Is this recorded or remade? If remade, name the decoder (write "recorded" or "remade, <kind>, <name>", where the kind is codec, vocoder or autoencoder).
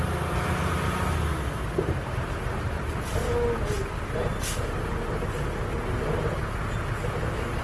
recorded